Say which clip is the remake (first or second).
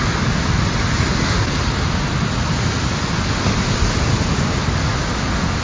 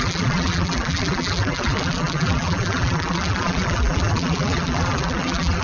second